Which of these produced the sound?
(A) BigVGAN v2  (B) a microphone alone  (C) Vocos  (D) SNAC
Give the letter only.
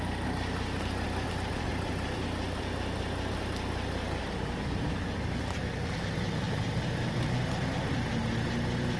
B